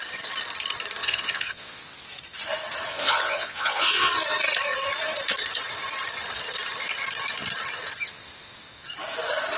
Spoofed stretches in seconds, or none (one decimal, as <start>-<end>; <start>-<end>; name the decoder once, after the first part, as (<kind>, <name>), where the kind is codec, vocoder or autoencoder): 1.0-1.8 (vocoder, Vocos); 2.9-4.1